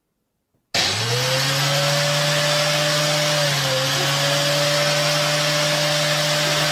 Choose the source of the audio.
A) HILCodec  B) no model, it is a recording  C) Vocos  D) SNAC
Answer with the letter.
B